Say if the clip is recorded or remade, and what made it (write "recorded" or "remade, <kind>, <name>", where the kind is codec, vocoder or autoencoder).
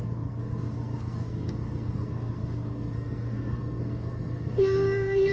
remade, codec, SNAC